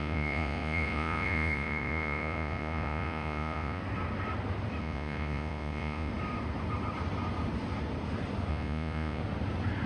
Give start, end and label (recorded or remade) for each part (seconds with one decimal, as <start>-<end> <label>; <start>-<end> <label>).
0.0-3.8 remade; 3.8-4.8 recorded; 4.8-6.1 remade; 6.1-8.5 recorded; 8.5-9.2 remade; 9.2-9.9 recorded

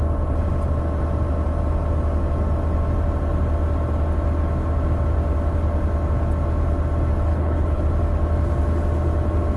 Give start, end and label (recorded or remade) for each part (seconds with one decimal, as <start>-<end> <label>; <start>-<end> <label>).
0.0-7.3 recorded; 7.3-7.8 remade; 7.8-9.6 recorded

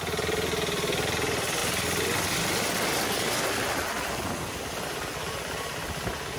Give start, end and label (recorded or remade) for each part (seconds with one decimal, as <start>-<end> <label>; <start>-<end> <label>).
0.0-6.4 recorded

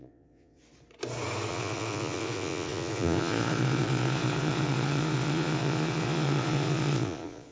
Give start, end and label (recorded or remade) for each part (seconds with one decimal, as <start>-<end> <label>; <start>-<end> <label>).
0.0-0.6 remade; 0.6-1.5 recorded; 1.5-7.5 remade

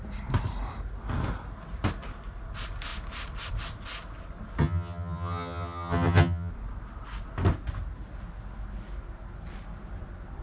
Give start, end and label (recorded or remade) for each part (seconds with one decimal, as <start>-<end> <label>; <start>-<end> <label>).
0.0-4.6 recorded; 4.6-6.5 remade; 6.5-10.4 recorded